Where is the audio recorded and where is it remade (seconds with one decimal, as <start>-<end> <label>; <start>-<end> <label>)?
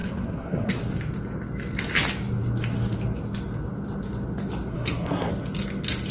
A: 0.0-0.8 remade; 0.8-4.7 recorded; 4.7-5.3 remade; 5.3-6.1 recorded